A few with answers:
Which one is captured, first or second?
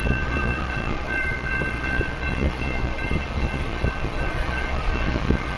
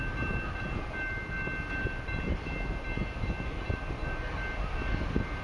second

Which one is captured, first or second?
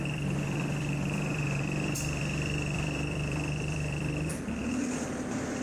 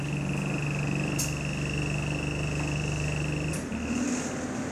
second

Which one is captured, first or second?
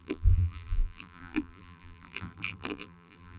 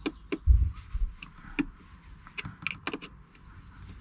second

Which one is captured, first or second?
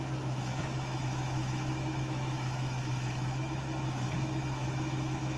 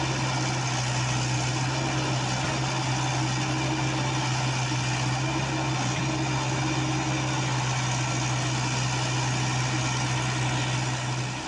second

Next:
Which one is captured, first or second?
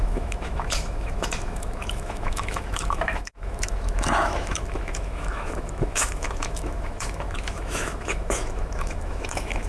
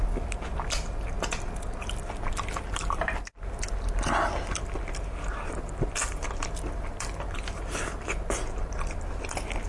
second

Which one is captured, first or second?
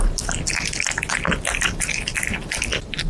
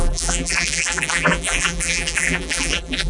first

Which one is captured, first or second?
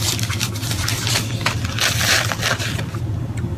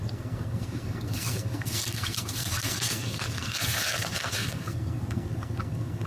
first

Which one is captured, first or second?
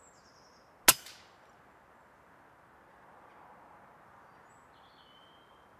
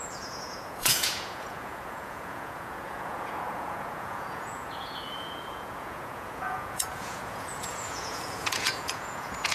first